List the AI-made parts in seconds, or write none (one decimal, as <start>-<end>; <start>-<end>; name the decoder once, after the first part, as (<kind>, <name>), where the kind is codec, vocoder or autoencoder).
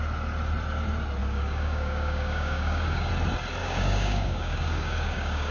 1.2-3.1 (codec, DAC); 3.6-5.5